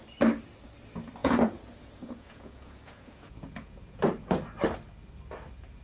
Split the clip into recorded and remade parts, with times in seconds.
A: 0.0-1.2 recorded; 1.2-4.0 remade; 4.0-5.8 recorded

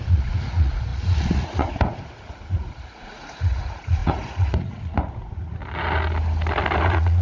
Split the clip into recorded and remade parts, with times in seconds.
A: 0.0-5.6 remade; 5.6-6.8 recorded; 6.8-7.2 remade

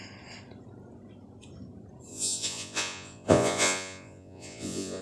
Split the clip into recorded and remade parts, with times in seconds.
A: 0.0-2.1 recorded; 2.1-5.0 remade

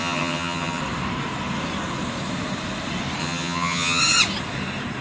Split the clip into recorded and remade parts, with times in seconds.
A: 0.0-0.8 remade; 0.8-3.2 recorded; 3.2-4.0 remade; 4.0-5.0 recorded

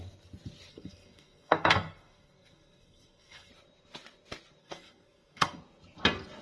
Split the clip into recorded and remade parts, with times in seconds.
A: 0.0-0.7 recorded; 0.7-3.5 remade; 3.5-4.6 recorded; 4.6-5.6 remade; 5.6-6.4 recorded